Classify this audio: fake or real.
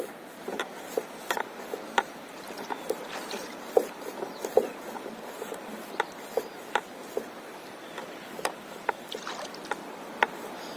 fake